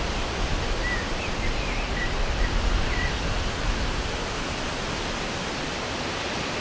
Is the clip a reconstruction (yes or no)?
no